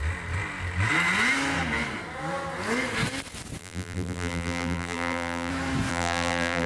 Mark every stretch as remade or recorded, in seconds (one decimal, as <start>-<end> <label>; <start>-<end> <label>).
0.0-3.6 recorded; 3.6-5.5 remade; 5.5-5.9 recorded; 5.9-6.7 remade